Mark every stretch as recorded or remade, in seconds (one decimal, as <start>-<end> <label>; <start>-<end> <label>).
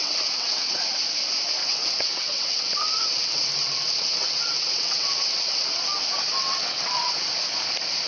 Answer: 0.0-0.8 remade; 0.8-1.6 recorded; 1.6-5.8 remade; 5.8-6.3 recorded; 6.3-7.1 remade; 7.1-8.1 recorded